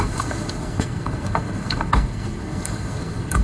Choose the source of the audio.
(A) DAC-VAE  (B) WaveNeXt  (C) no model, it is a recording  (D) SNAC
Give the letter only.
D